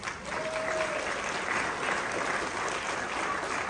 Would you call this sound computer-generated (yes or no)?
no